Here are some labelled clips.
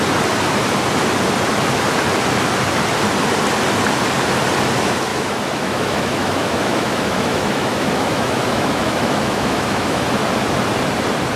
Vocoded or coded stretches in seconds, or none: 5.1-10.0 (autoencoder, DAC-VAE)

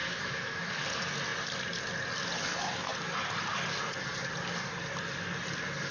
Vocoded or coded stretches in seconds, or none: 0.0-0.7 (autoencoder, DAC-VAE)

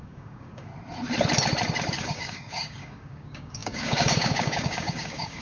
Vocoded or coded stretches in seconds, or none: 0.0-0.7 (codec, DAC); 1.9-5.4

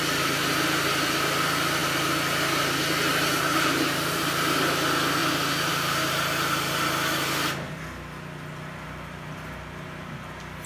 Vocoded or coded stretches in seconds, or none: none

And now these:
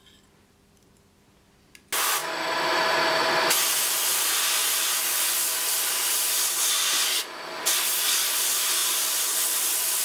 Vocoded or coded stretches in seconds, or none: none

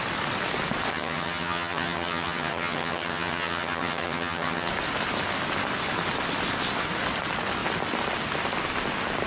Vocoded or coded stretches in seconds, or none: 0.9-4.7 (vocoder, HiFi-GAN)